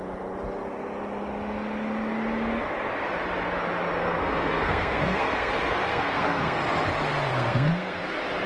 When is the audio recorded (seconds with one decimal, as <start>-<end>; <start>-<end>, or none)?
0.0-4.0; 5.5-5.9; 6.6-7.3; 8.0-8.5